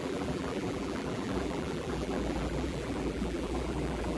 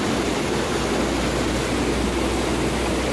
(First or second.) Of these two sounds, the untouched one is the second